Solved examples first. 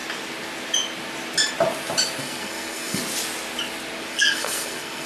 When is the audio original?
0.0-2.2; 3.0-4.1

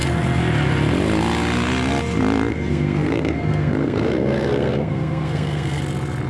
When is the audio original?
0.0-2.5; 5.8-6.3

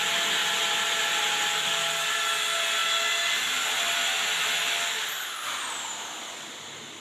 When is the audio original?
0.0-7.0

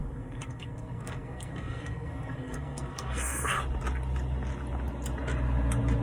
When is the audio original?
3.6-6.0